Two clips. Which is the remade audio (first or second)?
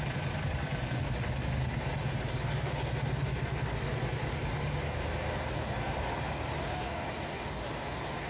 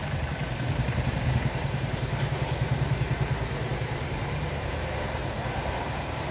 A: second